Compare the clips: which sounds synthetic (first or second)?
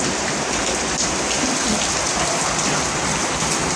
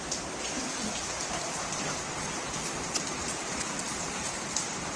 second